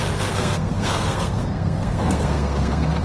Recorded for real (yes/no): no